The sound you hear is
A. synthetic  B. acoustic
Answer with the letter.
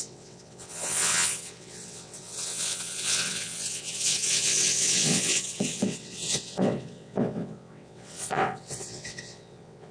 A